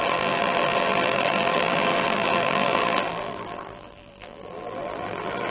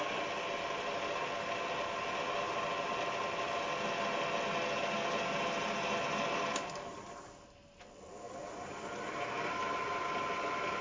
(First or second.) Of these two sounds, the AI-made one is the first